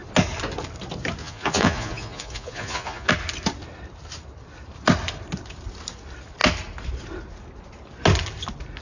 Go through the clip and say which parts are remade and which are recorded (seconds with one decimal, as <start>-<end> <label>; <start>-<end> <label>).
0.0-1.2 recorded; 1.2-3.1 remade; 3.1-8.8 recorded